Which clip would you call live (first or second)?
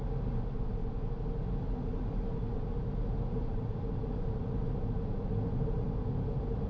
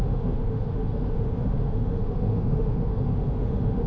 first